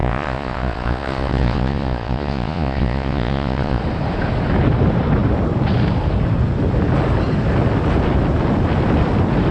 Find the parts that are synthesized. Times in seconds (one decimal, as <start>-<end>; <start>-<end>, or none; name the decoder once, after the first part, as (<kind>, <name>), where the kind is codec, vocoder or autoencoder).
0.0-3.8 (vocoder, Vocos)